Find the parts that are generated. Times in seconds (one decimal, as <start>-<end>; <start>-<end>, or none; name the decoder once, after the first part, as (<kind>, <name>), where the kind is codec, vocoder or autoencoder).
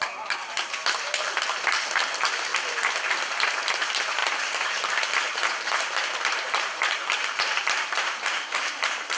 0.0-0.8 (vocoder, BigVGAN v2); 2.0-2.5; 3.7-9.2